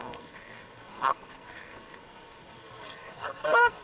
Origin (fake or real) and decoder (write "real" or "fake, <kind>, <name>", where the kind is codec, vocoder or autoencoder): fake, codec, SNAC